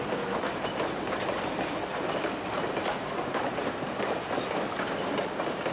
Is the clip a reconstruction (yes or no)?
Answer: no